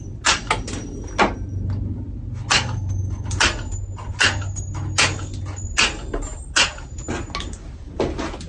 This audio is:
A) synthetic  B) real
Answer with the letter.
B